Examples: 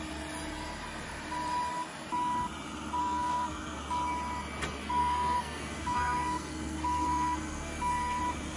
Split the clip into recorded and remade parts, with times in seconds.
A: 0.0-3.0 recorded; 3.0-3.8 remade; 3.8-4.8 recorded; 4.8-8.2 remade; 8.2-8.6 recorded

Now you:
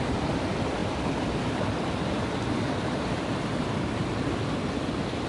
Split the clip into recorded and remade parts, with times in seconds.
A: 0.0-5.3 recorded

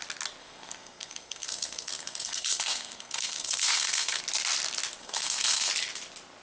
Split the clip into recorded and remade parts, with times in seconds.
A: 0.0-0.4 recorded; 0.4-4.2 remade; 4.2-5.0 recorded; 5.0-5.7 remade; 5.7-6.4 recorded

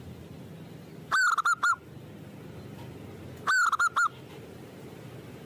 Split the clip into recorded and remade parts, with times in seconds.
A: 0.0-5.5 recorded

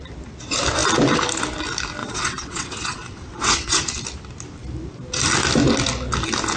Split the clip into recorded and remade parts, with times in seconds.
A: 0.0-2.0 recorded; 2.0-3.8 remade; 3.8-6.6 recorded

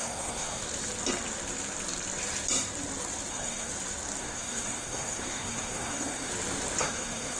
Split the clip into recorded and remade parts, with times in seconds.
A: 0.0-0.6 remade; 0.6-3.3 recorded; 3.3-3.7 remade; 3.7-4.2 recorded; 4.2-6.3 remade; 6.3-6.8 recorded; 6.8-7.4 remade

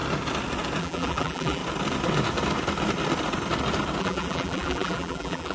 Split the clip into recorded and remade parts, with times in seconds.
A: 0.0-0.8 recorded; 0.8-1.6 remade; 1.6-4.0 recorded; 4.0-5.5 remade